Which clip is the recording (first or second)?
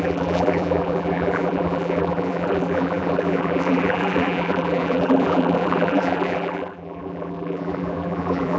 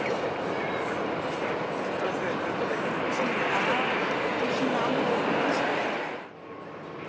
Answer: second